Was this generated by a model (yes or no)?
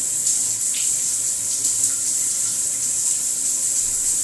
no